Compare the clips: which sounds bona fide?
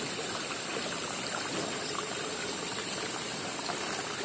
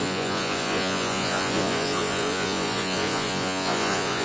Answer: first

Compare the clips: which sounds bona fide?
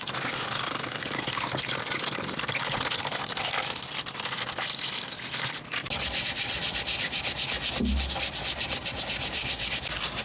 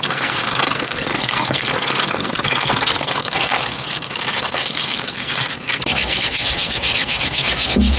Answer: first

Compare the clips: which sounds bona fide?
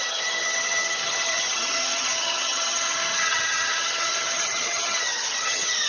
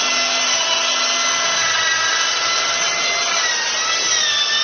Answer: second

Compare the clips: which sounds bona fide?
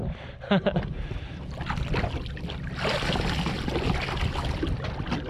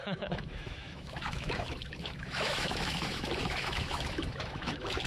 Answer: first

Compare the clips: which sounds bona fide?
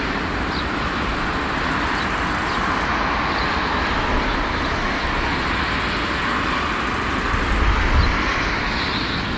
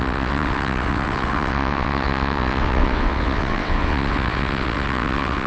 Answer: first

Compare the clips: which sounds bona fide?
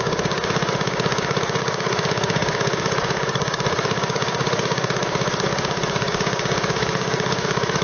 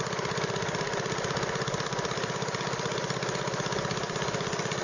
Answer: second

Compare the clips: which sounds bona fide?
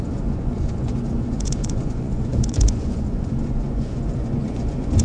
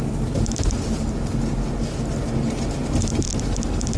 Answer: second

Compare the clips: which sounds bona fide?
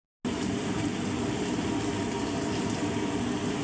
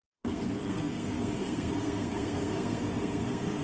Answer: first